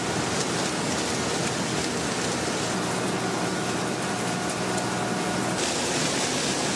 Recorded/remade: recorded